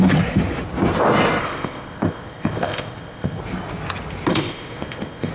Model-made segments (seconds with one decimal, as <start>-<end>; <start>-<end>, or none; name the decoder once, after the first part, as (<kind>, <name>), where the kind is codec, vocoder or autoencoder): 1.4-3.4 (codec, ZipCodec); 4.3-5.3